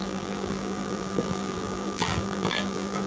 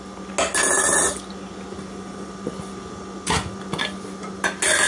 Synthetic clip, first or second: first